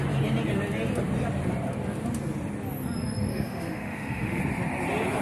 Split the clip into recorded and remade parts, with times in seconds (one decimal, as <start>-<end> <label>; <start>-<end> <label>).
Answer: 0.0-3.3 recorded; 3.3-4.4 remade; 4.4-5.2 recorded